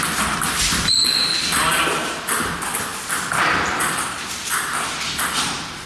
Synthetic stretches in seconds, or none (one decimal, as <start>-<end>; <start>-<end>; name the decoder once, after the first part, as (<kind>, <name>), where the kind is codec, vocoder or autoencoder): none

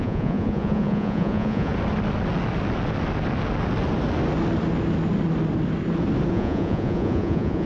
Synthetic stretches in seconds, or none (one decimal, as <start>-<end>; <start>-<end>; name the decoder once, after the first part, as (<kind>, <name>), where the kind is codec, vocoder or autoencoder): 0.0-1.7 (vocoder, Vocos); 6.3-7.7